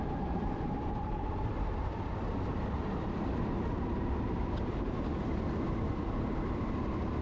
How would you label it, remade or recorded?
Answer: remade